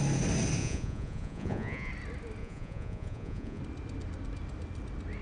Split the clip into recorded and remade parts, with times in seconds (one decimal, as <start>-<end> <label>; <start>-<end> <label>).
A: 0.0-0.6 recorded; 0.6-1.9 remade; 1.9-2.4 recorded; 2.4-3.6 remade; 3.6-5.2 recorded

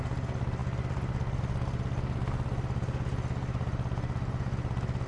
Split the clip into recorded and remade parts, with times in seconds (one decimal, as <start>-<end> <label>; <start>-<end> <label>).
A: 0.0-5.1 recorded

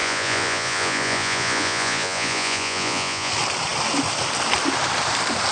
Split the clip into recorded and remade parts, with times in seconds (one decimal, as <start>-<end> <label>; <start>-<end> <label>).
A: 0.0-3.3 remade; 3.3-5.5 recorded

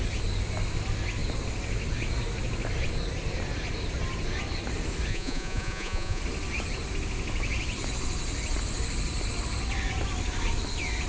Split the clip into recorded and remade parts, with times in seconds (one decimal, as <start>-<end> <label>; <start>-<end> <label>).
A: 0.0-5.1 recorded; 5.1-6.2 remade; 6.2-11.1 recorded

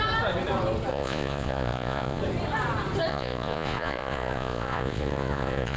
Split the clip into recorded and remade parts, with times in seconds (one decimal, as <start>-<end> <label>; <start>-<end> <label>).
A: 0.0-0.9 recorded; 0.9-2.2 remade; 2.2-3.1 recorded; 3.1-5.8 remade

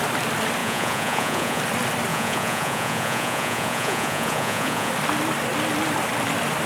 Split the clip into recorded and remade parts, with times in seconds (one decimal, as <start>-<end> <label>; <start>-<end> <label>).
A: 0.0-0.6 recorded; 0.6-1.6 remade; 1.6-2.1 recorded; 2.1-4.9 remade; 4.9-6.7 recorded

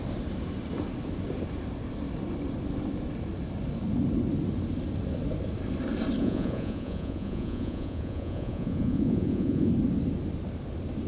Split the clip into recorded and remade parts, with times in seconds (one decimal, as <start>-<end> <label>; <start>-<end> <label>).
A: 0.0-6.2 recorded; 6.2-9.7 remade; 9.7-11.1 recorded

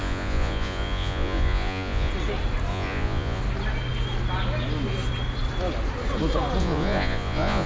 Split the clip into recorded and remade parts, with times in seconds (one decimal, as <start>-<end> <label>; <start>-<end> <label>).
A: 0.0-2.1 remade; 2.1-2.7 recorded; 2.7-3.4 remade; 3.4-6.6 recorded; 6.6-7.7 remade